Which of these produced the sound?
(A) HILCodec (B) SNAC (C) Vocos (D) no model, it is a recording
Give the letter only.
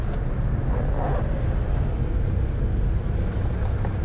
D